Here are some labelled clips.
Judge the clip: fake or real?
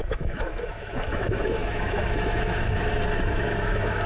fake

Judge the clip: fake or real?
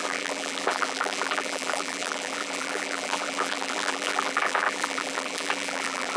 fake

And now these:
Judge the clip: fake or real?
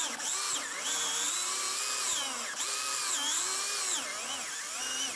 real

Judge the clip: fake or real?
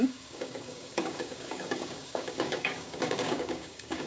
fake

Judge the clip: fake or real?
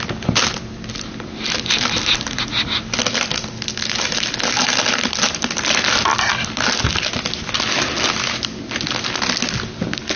real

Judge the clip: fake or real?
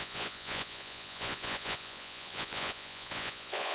fake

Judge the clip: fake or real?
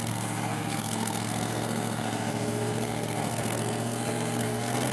fake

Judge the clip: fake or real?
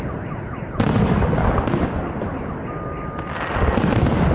real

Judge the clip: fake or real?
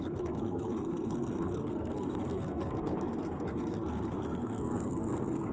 fake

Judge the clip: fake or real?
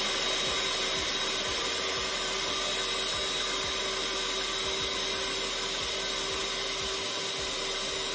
real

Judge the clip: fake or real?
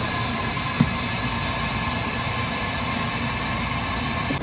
real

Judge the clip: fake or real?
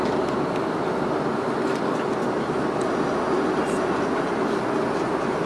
real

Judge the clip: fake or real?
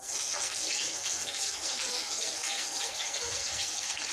fake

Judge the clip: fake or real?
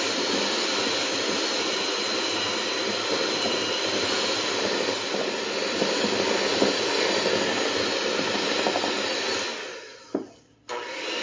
real